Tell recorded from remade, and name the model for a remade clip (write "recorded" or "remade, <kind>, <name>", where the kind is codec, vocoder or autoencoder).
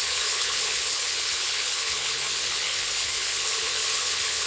remade, codec, HILCodec